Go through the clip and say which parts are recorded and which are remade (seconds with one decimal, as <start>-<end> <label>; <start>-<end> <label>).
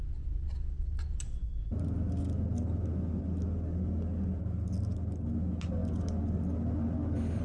0.0-7.4 recorded